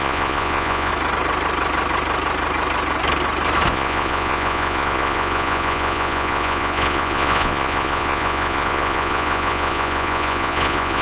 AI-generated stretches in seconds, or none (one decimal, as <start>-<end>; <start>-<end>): 0.0-0.9; 3.7-11.0